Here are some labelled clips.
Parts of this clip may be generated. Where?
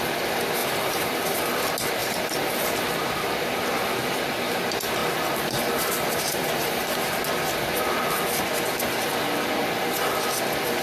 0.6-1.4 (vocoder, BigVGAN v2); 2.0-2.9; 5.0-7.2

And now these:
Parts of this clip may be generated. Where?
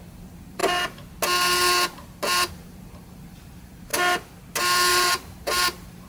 0.0-0.6 (vocoder, BigVGAN v2); 2.5-3.9; 4.9-6.1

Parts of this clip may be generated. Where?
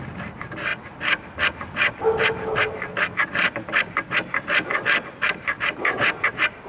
none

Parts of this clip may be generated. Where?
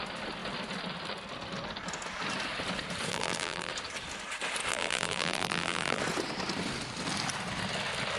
3.1-3.7 (vocoder, BigVGAN v2); 4.7-6.0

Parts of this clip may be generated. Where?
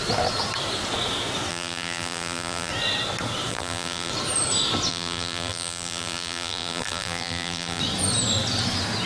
1.5-2.7 (vocoder, BigVGAN v2); 3.5-4.1; 4.9-7.8